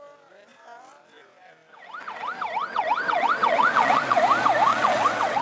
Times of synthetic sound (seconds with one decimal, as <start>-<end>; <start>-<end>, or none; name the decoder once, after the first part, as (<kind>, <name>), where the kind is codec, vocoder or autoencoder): 2.6-4.2 (vocoder, WaveNeXt); 4.7-5.4